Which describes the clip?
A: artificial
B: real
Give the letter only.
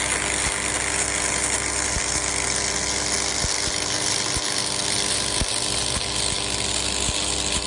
B